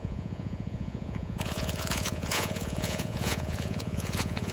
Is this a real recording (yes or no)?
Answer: no